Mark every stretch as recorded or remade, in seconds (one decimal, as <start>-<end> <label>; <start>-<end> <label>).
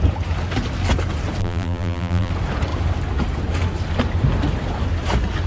0.0-1.4 recorded; 1.4-2.3 remade; 2.3-5.5 recorded